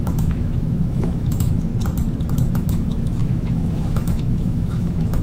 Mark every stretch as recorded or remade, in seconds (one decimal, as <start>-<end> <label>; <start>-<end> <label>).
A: 0.0-1.7 remade; 1.7-2.3 recorded; 2.3-5.2 remade